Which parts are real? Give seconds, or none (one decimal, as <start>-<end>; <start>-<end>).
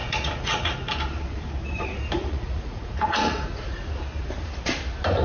0.9-2.2; 3.9-5.2